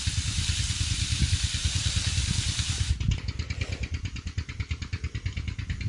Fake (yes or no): no